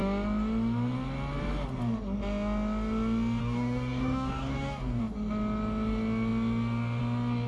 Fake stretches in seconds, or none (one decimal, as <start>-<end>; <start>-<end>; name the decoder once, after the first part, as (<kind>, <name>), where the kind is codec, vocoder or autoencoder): 3.4-5.0 (codec, DAC)